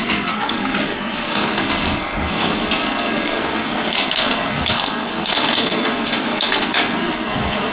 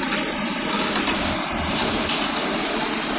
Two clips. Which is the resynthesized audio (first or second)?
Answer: first